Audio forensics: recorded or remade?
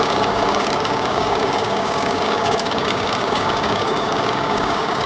remade